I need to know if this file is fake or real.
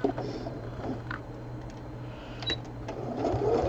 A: fake